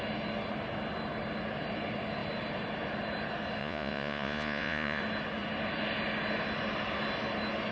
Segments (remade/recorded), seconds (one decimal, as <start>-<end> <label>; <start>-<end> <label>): 0.0-3.6 recorded; 3.6-5.0 remade; 5.0-7.7 recorded